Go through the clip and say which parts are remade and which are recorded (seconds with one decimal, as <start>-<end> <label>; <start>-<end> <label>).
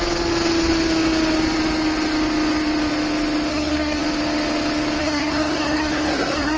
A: 0.0-3.5 recorded; 3.5-4.0 remade; 4.0-5.0 recorded; 5.0-6.6 remade